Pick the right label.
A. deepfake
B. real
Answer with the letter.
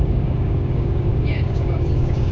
A